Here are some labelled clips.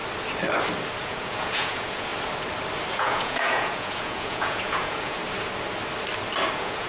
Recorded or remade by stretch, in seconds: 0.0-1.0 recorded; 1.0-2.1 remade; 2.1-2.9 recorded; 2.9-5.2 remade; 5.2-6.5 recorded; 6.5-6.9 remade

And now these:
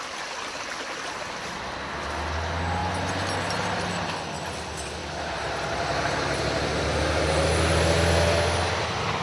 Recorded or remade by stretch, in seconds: 0.0-9.2 recorded

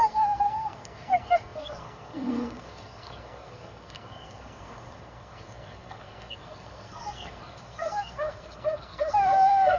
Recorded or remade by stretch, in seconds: 0.0-9.8 remade

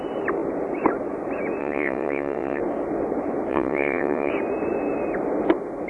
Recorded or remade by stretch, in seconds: 0.0-1.6 recorded; 1.6-2.6 remade; 2.6-3.5 recorded; 3.5-4.3 remade; 4.3-5.9 recorded

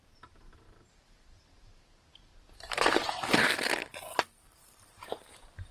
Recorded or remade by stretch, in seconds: 0.0-2.3 remade; 2.3-4.9 recorded; 4.9-5.7 remade

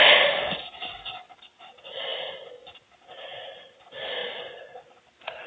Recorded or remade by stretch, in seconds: 0.0-3.3 recorded; 3.3-3.8 remade; 3.8-4.2 recorded; 4.2-4.8 remade; 4.8-5.5 recorded